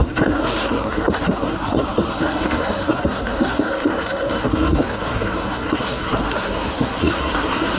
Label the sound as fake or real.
fake